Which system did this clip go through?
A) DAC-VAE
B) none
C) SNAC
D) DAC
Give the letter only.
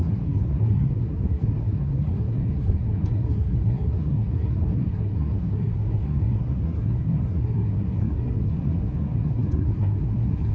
C